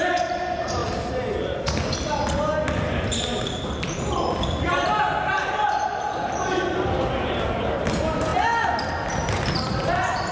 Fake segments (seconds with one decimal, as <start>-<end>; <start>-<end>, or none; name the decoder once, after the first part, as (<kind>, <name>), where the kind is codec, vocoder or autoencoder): 0.0-0.8 (vocoder, BigVGAN v2); 3.4-8.3; 9.2-10.3